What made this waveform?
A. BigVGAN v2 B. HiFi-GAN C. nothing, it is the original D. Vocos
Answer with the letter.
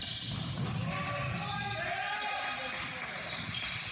C